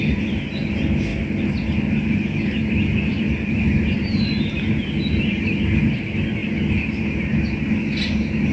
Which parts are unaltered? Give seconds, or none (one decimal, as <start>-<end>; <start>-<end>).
0.0-8.5